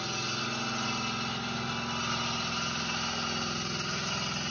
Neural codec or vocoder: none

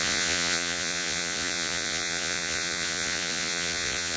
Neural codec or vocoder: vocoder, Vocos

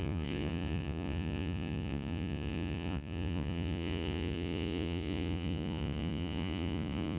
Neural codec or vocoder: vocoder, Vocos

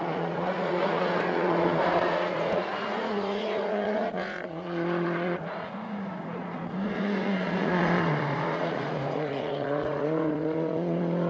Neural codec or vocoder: vocoder, Vocos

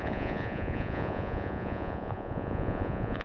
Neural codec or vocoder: vocoder, Vocos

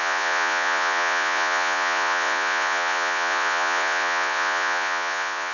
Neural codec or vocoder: vocoder, Vocos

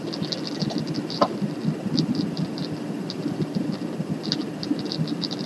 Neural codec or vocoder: none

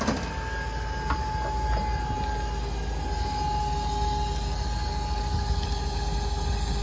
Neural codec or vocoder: none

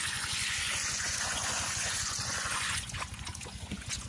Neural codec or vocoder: vocoder, Vocos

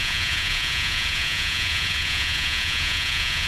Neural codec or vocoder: vocoder, Vocos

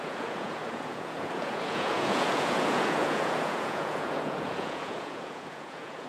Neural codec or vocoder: vocoder, Vocos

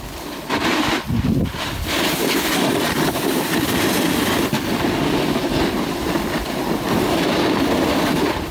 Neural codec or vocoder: none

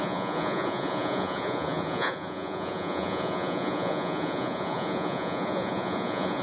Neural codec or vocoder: vocoder, Vocos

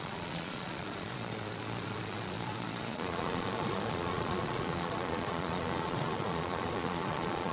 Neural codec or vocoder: vocoder, Vocos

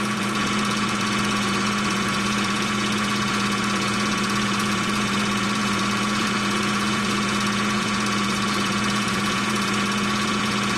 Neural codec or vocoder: vocoder, Vocos